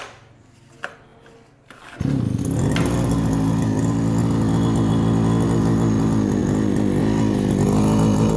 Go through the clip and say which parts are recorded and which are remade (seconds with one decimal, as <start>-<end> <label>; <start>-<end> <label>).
0.0-8.4 recorded